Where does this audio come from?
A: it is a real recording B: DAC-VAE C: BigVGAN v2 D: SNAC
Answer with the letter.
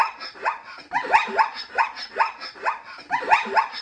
A